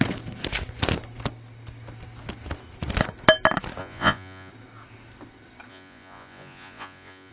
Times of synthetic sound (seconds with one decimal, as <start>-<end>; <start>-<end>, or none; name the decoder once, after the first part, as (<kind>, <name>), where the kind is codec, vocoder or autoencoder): 3.8-4.5 (vocoder, Vocos); 5.7-7.3